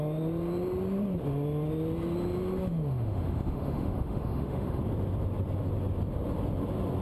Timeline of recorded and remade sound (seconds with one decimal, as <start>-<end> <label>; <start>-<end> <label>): 0.0-2.6 recorded; 2.6-4.8 remade; 4.8-7.0 recorded